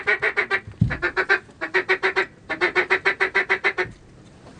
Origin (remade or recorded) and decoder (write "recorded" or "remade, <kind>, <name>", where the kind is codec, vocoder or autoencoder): recorded